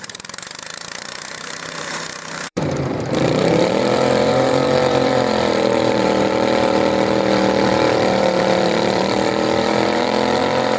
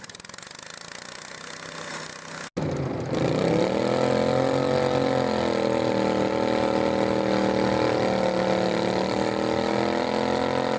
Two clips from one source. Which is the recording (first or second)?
second